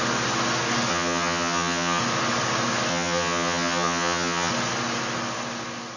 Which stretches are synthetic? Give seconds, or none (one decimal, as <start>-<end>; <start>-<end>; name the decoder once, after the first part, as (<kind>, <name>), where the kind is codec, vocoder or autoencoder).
0.9-2.0 (vocoder, HiFi-GAN); 2.9-4.5